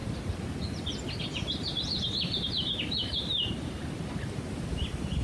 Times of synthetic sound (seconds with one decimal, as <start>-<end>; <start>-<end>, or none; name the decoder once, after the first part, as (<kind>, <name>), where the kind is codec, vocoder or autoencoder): 1.7-4.8 (vocoder, BigVGAN v2)